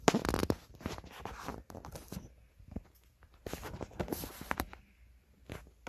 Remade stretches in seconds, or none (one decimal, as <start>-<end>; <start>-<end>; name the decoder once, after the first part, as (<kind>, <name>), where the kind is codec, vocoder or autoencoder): none